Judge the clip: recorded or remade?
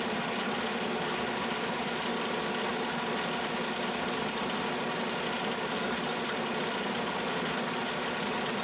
recorded